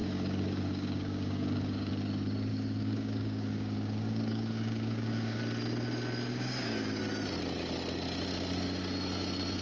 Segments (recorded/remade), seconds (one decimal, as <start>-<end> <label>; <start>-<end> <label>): 0.0-1.9 remade; 1.9-2.5 recorded; 2.5-5.4 remade; 5.4-6.3 recorded; 6.3-7.0 remade; 7.0-9.6 recorded